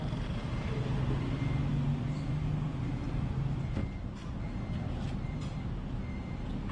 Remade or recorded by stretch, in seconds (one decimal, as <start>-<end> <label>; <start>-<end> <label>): 0.0-6.7 recorded